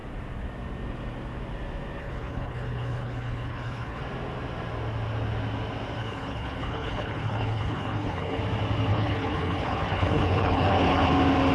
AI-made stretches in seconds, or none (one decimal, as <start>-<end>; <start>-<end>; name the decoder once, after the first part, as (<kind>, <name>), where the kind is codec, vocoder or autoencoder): 2.0-4.0 (codec, HILCodec); 6.0-8.4; 8.9-11.1